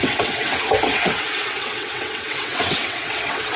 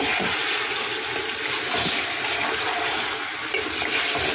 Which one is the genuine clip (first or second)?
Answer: second